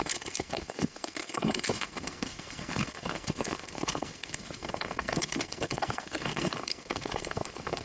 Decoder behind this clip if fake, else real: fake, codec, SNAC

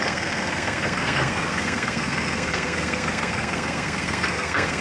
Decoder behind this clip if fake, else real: fake, codec, SNAC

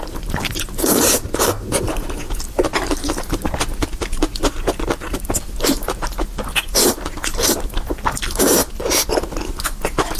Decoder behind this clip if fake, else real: real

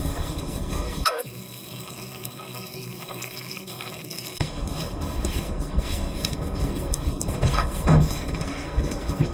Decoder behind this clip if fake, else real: fake, codec, SNAC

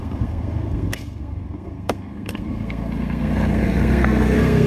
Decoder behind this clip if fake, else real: fake, codec, SNAC